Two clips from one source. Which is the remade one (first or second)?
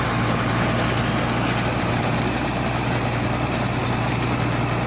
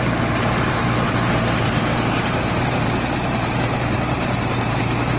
second